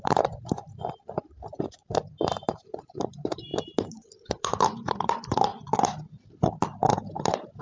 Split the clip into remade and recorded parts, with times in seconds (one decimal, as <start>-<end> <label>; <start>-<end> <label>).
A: 0.0-5.5 remade; 5.5-6.9 recorded; 6.9-7.6 remade

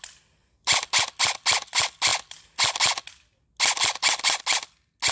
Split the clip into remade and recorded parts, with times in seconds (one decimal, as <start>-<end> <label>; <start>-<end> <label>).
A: 0.0-0.4 recorded; 0.4-1.0 remade; 1.0-5.1 recorded